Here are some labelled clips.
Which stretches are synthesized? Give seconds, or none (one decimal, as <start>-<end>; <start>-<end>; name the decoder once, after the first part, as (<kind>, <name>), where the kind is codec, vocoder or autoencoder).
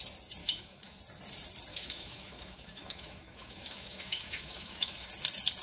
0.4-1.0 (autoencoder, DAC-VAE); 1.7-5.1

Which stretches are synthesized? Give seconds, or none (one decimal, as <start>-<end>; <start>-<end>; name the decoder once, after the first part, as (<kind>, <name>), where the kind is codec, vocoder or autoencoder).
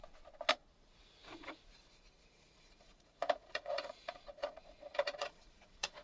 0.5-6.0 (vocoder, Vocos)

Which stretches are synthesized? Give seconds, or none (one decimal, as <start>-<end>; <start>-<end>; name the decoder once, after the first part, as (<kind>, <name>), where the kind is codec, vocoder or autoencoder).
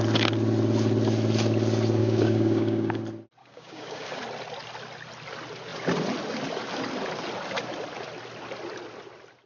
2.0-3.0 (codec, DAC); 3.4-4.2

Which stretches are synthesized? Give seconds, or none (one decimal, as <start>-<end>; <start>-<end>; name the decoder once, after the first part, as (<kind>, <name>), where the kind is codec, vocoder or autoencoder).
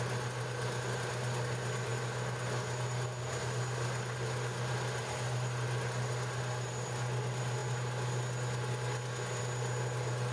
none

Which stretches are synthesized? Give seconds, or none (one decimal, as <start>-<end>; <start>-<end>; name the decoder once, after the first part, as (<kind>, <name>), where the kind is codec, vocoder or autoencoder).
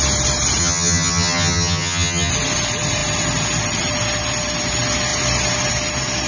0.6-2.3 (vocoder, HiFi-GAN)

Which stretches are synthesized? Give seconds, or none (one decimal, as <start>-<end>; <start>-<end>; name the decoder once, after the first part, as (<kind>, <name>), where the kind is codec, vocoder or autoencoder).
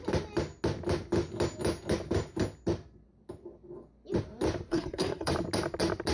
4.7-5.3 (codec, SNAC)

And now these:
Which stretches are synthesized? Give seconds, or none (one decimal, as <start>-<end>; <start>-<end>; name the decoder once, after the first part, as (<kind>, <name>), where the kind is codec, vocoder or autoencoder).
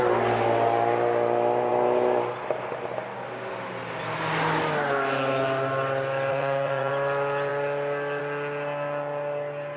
6.3-6.9 (vocoder, Vocos)